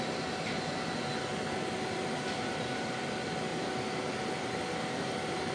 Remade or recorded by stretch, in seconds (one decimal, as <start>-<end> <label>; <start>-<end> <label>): 0.0-5.5 recorded